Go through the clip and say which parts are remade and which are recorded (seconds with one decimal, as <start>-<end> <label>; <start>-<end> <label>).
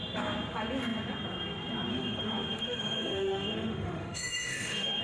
0.0-1.9 recorded; 1.9-5.0 remade